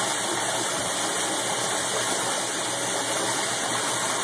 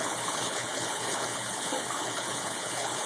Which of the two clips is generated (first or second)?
second